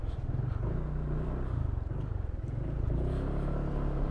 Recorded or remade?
recorded